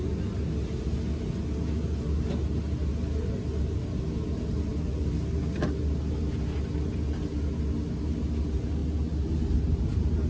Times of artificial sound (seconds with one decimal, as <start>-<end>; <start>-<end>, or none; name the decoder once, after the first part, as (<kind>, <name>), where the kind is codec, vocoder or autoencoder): none